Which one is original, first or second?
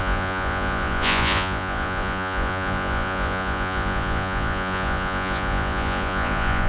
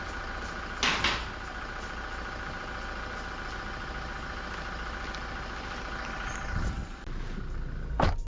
second